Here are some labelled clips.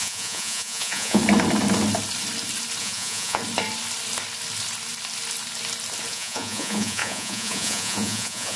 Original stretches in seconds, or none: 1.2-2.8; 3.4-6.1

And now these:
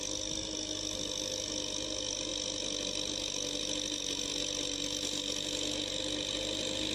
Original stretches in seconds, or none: 0.0-6.9